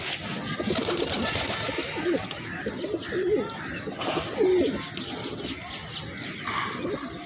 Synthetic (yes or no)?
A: no